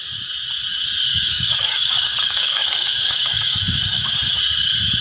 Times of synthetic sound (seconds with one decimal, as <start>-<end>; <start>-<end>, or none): 1.1-4.1